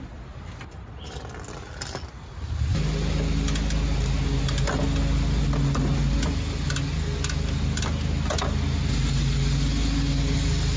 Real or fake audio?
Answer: real